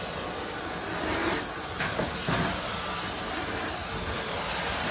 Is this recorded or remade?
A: recorded